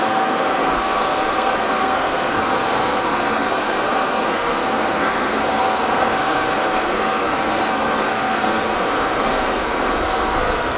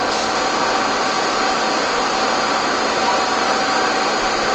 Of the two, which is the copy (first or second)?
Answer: first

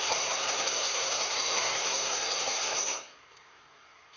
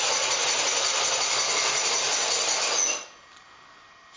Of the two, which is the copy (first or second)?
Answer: first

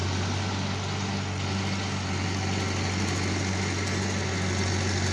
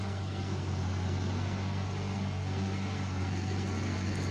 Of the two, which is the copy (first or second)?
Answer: second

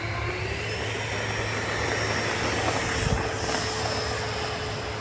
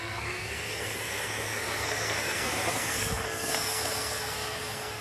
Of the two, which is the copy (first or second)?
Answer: second